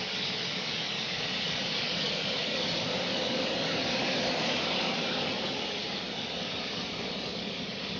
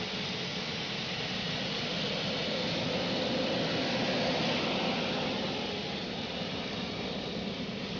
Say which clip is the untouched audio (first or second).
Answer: second